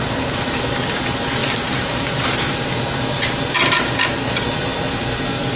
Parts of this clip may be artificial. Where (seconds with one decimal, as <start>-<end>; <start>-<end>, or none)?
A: 1.4-2.7